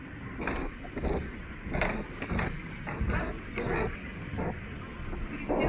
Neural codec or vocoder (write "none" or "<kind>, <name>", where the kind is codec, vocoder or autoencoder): none